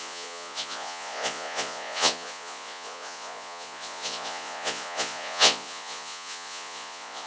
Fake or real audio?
fake